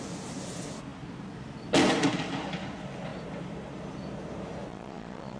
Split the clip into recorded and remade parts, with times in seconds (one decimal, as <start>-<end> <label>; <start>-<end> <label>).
0.0-4.7 recorded; 4.7-5.4 remade